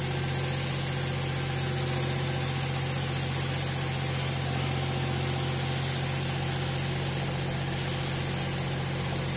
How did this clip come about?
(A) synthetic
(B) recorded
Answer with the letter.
B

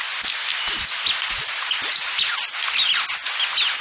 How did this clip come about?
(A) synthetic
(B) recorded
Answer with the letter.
B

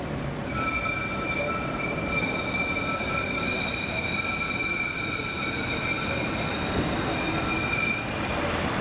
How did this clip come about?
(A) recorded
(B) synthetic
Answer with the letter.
A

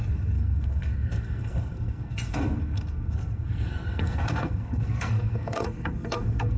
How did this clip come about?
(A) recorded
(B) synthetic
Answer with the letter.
B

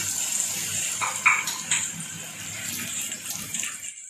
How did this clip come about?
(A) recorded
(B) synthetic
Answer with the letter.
A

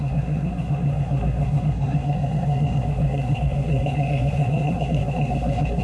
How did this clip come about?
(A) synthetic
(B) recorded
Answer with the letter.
A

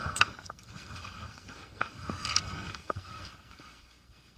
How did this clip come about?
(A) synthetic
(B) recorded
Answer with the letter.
A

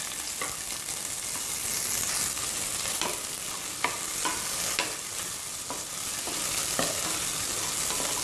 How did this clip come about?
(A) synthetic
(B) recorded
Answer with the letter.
B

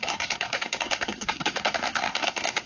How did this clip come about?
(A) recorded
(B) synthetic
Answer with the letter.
B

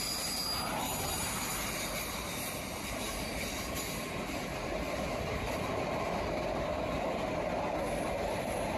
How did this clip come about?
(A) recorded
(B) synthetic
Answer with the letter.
A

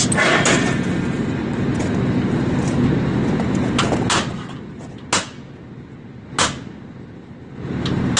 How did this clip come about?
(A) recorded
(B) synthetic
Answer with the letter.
A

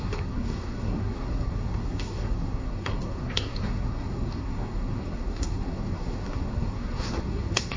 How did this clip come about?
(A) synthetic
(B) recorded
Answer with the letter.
A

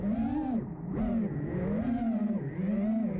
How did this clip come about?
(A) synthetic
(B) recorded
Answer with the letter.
B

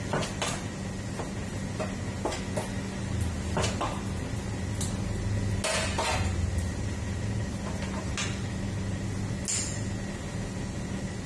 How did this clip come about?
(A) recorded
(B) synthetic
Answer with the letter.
A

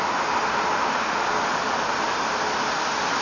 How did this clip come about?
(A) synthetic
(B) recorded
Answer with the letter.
B